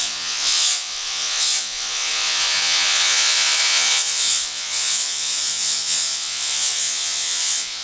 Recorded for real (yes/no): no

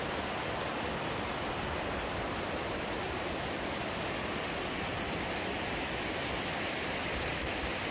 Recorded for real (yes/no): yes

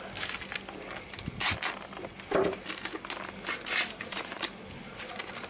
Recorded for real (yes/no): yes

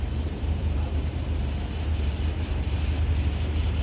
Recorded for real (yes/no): yes